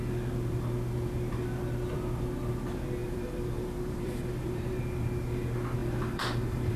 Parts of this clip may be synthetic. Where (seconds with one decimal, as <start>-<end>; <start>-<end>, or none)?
3.0-4.8; 5.8-6.8